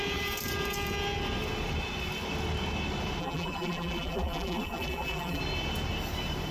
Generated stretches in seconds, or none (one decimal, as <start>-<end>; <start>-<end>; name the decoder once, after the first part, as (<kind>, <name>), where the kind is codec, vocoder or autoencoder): 3.2-5.4 (vocoder, BigVGAN v2)